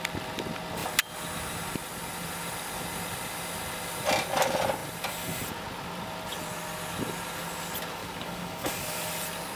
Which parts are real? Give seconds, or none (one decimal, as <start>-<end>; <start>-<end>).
0.0-8.0; 9.1-9.6

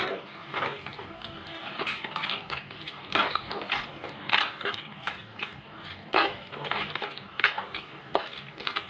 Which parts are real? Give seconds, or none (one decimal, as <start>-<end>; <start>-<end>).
none

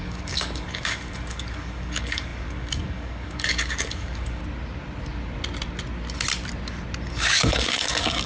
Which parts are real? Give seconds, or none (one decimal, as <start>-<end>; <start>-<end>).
4.4-7.1